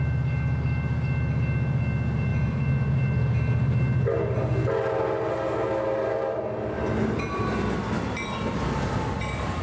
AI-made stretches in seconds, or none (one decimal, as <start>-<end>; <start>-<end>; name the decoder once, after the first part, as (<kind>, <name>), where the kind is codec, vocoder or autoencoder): none